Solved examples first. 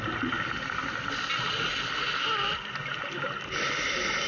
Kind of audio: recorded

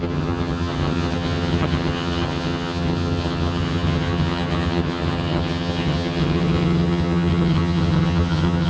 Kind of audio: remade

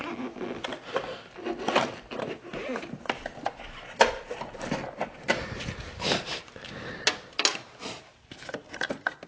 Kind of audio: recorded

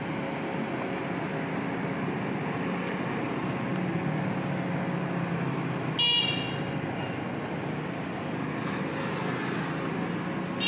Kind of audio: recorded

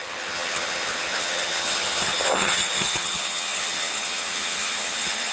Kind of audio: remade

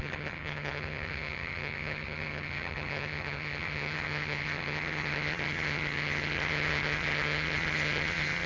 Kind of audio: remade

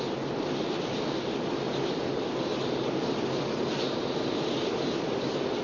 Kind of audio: recorded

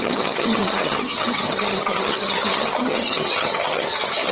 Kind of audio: remade